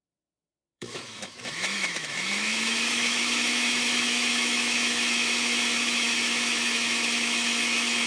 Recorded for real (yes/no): no